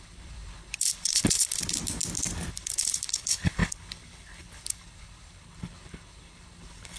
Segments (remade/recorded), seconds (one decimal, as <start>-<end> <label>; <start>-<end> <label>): 0.0-1.6 remade; 1.6-2.5 recorded; 2.5-7.0 remade